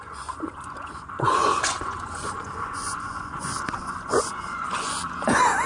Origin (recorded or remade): remade